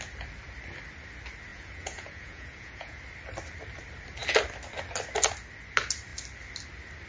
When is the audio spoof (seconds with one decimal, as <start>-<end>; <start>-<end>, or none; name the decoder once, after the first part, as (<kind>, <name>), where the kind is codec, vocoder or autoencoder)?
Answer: 1.5-3.0 (vocoder, Vocos)